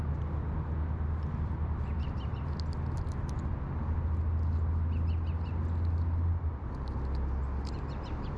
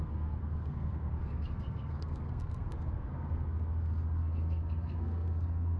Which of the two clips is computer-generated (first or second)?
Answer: second